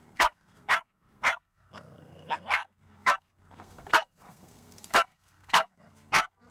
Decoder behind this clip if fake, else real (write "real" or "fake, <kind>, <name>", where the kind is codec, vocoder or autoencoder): fake, codec, SNAC